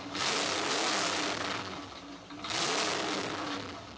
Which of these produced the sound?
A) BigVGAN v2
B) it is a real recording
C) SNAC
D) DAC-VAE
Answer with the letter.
B